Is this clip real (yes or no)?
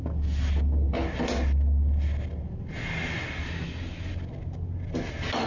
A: yes